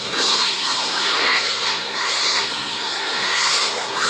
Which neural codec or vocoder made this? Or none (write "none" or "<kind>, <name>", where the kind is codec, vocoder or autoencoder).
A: codec, SNAC